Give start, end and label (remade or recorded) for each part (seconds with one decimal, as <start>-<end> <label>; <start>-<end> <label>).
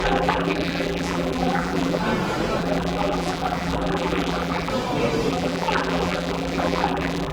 0.0-2.0 remade; 2.0-2.6 recorded; 2.6-4.7 remade; 4.7-5.3 recorded; 5.3-7.3 remade